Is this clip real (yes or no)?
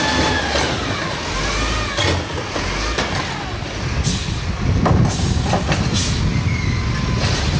yes